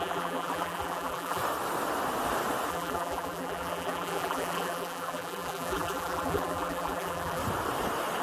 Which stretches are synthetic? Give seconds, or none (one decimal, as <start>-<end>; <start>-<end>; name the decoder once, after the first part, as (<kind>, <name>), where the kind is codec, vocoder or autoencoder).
0.0-1.4 (vocoder, BigVGAN v2); 2.7-7.4